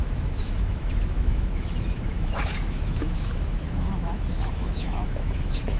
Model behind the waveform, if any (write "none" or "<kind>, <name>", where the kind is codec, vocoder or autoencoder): autoencoder, DAC-VAE